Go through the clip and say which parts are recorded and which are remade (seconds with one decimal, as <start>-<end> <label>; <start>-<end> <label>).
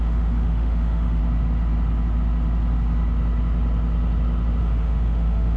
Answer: 0.0-1.2 remade; 1.2-4.6 recorded; 4.6-5.6 remade